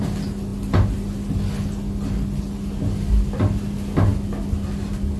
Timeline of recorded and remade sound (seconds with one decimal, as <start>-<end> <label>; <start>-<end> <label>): 0.0-5.2 recorded